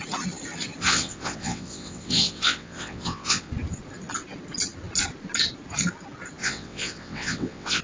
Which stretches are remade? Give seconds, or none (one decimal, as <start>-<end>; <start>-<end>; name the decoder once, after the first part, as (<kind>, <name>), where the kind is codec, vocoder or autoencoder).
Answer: 0.8-3.5 (vocoder, WaveNeXt); 6.4-7.8